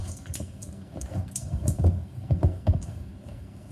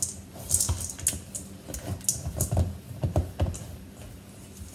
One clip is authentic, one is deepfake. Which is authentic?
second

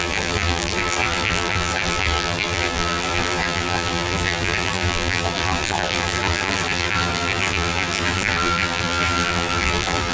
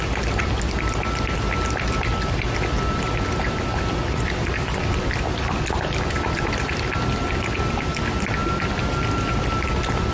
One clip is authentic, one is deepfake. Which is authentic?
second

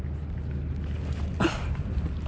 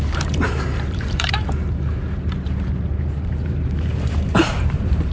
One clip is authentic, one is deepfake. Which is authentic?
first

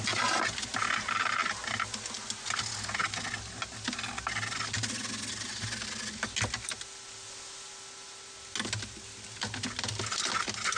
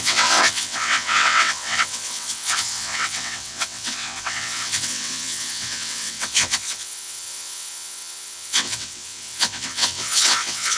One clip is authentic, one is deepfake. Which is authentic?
first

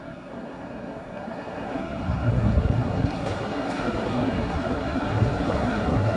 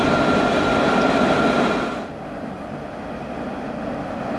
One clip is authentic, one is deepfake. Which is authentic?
second